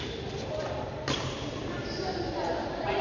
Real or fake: fake